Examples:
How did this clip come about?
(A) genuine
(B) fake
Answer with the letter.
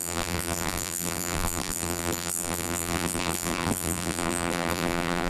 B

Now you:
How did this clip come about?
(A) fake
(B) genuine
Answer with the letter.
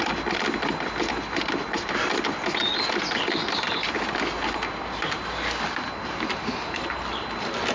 B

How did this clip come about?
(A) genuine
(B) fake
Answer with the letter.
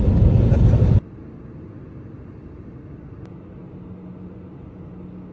A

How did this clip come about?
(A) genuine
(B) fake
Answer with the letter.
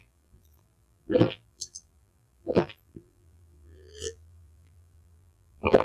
B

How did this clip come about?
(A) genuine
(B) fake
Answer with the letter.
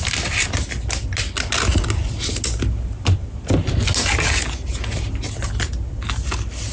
A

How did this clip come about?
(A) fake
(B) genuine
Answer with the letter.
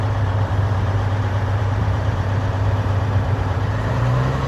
A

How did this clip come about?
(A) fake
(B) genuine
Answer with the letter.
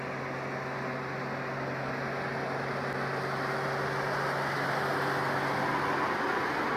B